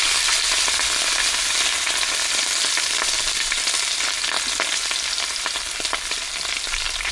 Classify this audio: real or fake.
real